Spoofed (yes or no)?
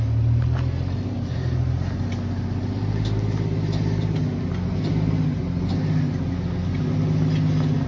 no